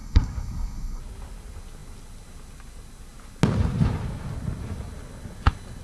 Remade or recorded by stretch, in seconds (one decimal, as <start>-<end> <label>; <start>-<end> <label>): 0.0-1.0 remade; 1.0-5.8 recorded